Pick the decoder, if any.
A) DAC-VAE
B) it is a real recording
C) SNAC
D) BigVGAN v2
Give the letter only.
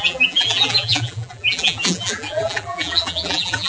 D